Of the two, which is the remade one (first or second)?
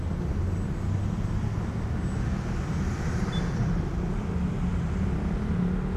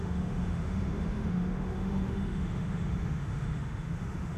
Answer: second